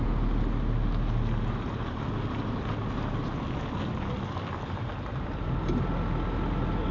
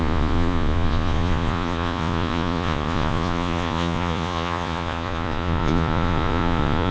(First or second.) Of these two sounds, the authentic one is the first